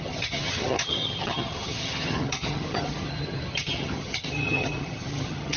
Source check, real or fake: fake